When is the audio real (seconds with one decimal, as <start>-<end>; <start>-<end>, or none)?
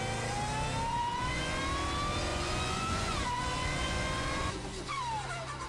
0.0-0.9; 1.6-2.3; 5.0-5.7